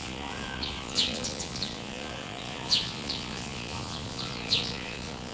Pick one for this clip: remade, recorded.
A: remade